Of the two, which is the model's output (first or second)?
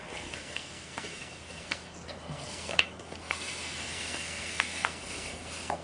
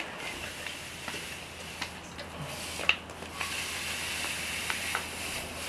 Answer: first